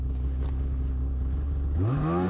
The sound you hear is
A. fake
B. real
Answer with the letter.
B